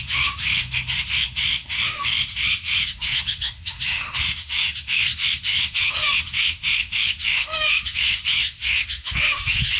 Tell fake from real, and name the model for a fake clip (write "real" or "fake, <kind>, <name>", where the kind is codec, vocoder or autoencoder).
fake, autoencoder, DAC-VAE